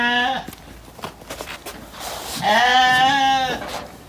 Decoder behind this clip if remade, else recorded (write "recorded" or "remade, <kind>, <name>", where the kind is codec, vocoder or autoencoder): recorded